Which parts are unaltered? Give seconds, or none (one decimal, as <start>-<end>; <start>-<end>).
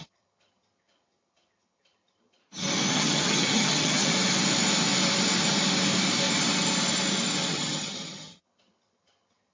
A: 2.4-2.9; 4.1-7.5